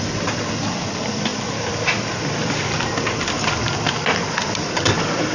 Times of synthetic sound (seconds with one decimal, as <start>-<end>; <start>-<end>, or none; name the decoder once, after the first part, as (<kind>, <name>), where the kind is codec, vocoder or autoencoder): none